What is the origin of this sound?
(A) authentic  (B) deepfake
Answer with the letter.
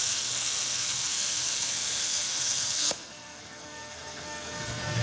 B